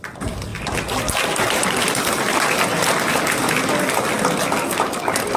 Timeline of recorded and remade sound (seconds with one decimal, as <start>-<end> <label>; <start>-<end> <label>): 0.0-5.4 recorded